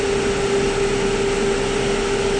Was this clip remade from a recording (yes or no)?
no